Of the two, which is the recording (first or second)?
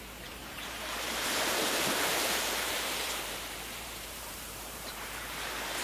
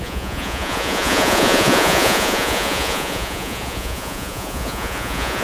first